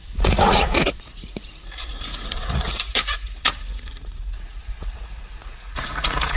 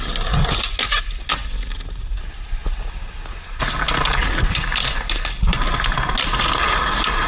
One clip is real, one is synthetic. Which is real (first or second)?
second